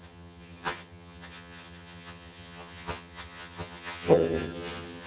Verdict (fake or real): fake